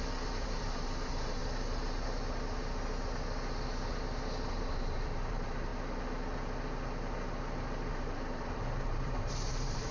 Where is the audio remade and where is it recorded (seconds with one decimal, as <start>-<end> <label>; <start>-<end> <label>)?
0.0-1.4 remade; 1.4-4.4 recorded; 4.4-5.7 remade; 5.7-7.9 recorded; 7.9-9.9 remade

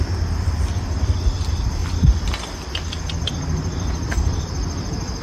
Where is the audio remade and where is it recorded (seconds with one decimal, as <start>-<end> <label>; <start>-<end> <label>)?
0.0-1.8 remade; 1.8-3.3 recorded; 3.3-5.2 remade

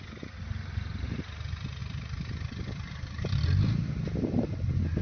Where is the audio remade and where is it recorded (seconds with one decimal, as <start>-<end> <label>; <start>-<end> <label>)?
0.0-1.8 recorded; 1.8-5.0 remade

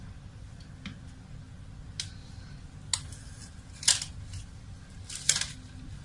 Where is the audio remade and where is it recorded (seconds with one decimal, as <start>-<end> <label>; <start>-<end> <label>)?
0.0-6.0 recorded

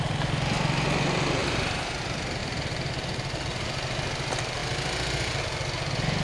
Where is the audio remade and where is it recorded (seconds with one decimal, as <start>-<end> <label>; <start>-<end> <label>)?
0.0-1.4 recorded; 1.4-2.0 remade; 2.0-2.4 recorded; 2.4-2.9 remade; 2.9-6.2 recorded